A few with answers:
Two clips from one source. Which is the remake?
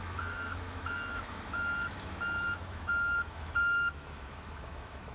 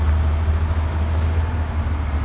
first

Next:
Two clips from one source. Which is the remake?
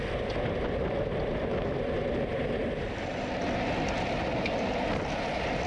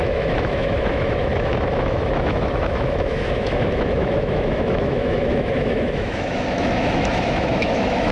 second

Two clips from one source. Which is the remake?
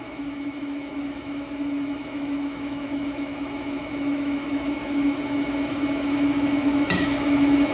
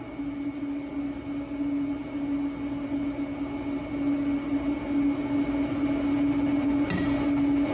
first